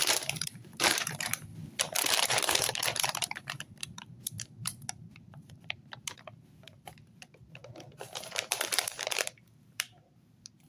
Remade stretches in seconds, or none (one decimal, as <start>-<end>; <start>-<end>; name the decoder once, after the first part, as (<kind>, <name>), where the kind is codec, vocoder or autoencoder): 0.0-1.5 (vocoder, BigVGAN v2); 2.0-10.7